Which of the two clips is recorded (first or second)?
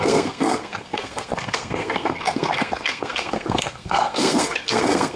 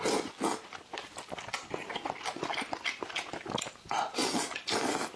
second